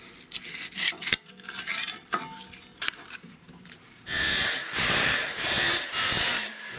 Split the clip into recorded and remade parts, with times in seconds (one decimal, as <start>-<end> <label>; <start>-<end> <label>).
0.0-2.7 recorded; 2.7-6.8 remade